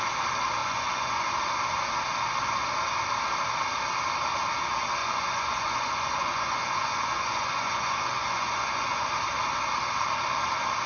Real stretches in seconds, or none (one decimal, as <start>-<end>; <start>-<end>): 0.0-0.6; 1.3-5.0; 9.1-10.9

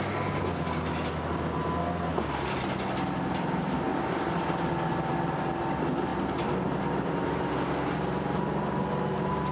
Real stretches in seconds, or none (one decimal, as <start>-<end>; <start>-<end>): 0.0-9.5

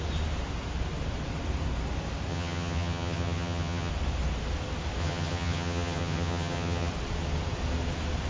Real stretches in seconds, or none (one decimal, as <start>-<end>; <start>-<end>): 0.0-2.3; 3.9-5.0; 6.9-8.3

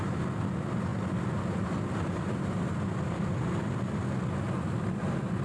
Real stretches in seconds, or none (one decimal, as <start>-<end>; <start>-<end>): 0.0-5.4